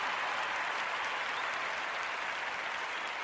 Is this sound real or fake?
real